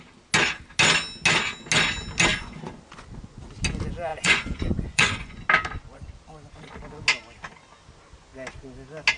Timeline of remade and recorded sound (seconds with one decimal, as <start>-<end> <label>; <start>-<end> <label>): 0.0-2.3 recorded; 2.3-3.4 remade; 3.4-4.1 recorded; 4.1-5.4 remade; 5.4-9.2 recorded